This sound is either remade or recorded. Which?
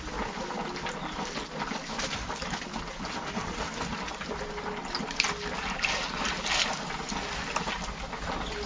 recorded